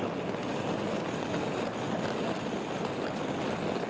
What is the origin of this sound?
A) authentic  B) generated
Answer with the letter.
A